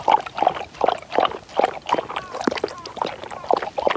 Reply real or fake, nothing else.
real